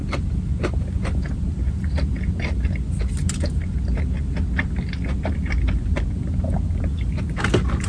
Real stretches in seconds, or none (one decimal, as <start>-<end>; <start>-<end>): 0.0-7.9